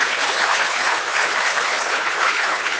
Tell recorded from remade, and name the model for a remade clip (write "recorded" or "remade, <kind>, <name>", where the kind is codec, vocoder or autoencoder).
remade, codec, HILCodec